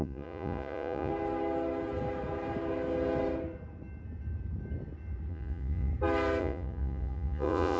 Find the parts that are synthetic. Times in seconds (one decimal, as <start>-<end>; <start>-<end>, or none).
0.0-1.1; 5.3-5.9; 6.4-7.8